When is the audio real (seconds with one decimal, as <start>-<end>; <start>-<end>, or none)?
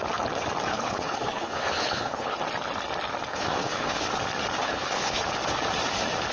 0.0-0.7; 2.4-3.3; 4.0-4.6; 5.2-6.3